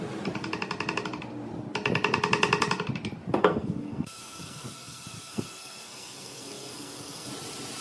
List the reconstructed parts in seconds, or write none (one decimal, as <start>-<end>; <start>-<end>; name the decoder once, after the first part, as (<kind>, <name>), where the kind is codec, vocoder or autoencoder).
3.4-7.3 (codec, SNAC)